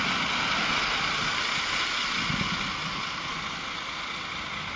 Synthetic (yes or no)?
no